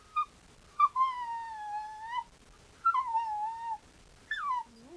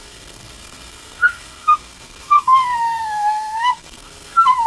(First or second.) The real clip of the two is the first